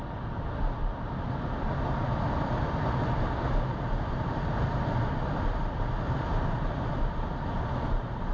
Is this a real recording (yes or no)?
yes